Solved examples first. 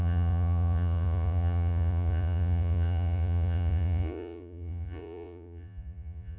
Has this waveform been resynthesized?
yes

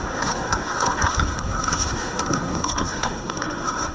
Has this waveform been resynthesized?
yes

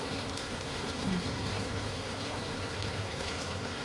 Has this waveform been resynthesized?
yes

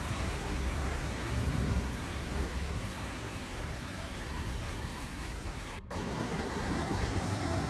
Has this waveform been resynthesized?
yes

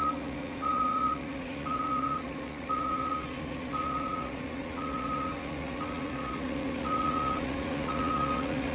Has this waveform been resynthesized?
yes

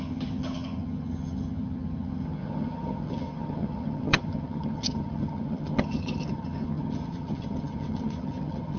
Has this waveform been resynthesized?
yes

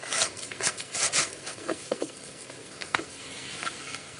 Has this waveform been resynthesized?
yes